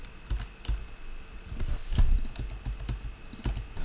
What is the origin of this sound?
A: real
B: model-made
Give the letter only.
A